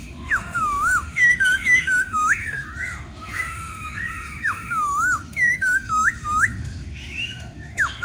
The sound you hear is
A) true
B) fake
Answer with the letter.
B